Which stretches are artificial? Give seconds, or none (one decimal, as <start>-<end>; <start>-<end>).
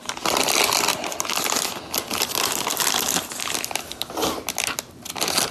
none